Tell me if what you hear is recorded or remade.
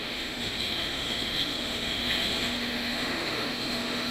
remade